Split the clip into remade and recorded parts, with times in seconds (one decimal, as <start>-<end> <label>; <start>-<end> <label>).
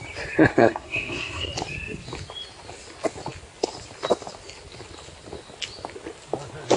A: 0.0-0.5 recorded; 0.5-1.5 remade; 1.5-6.8 recorded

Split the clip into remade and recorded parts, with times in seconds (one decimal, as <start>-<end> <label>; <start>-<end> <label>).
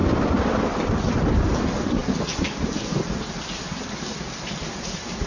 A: 0.0-5.3 recorded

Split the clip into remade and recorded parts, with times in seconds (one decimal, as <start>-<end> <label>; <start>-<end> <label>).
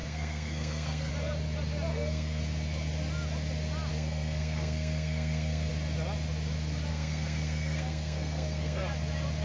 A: 0.0-1.1 remade; 1.1-1.9 recorded; 1.9-2.4 remade; 2.4-3.9 recorded; 3.9-5.7 remade; 5.7-6.9 recorded; 6.9-8.8 remade; 8.8-9.4 recorded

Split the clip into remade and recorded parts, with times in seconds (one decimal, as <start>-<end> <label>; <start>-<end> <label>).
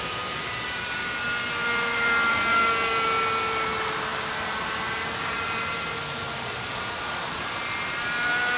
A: 0.0-8.6 recorded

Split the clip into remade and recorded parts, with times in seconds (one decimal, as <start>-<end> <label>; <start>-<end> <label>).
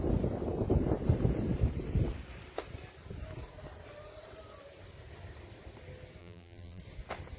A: 0.0-6.2 recorded; 6.2-6.8 remade; 6.8-7.4 recorded